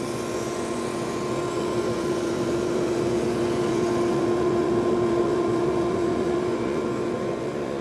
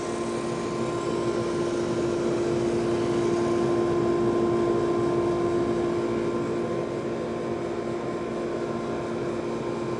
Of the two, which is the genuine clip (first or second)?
second